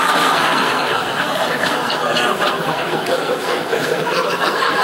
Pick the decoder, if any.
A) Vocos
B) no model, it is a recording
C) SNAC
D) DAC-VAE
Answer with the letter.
C